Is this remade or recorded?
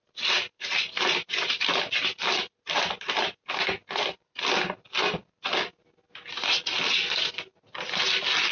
recorded